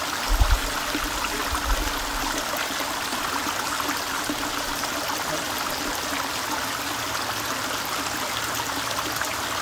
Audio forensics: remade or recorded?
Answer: recorded